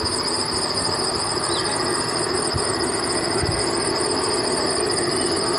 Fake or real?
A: real